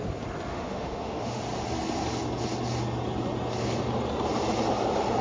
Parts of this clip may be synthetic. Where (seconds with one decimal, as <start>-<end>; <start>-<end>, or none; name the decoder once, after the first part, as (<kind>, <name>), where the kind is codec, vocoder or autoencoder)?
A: 0.5-1.4 (autoencoder, DAC-VAE)